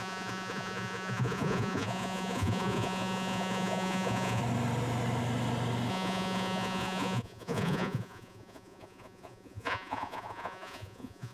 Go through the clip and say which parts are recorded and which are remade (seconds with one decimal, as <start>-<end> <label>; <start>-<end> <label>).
0.0-4.4 remade; 4.4-5.9 recorded; 5.9-11.3 remade